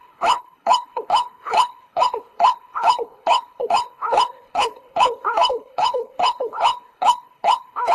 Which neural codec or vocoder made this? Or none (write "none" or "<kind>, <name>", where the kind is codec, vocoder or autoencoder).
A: codec, HILCodec